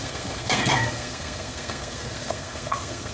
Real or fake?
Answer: fake